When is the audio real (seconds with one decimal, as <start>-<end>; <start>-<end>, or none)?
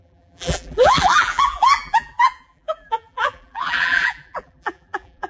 none